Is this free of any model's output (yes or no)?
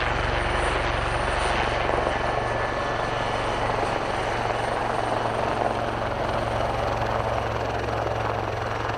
yes